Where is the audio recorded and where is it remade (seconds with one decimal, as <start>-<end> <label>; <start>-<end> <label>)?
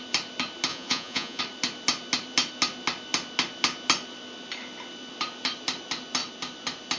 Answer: 0.0-0.7 recorded; 0.7-1.4 remade; 1.4-7.0 recorded